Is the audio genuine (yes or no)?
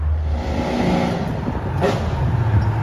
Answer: yes